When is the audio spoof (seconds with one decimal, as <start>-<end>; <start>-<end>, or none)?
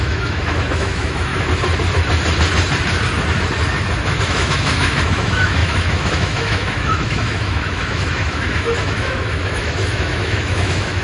0.0-1.3; 4.2-11.0